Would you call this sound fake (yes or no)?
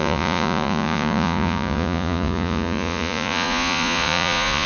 yes